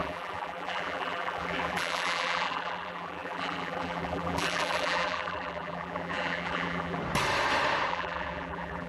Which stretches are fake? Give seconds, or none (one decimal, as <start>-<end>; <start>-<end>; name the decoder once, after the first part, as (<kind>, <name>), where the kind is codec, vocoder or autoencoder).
0.0-7.0 (vocoder, BigVGAN v2); 7.9-8.9